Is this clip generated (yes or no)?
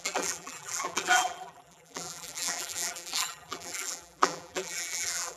yes